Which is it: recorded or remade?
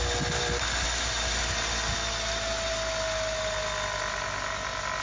recorded